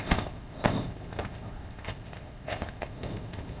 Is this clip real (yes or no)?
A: no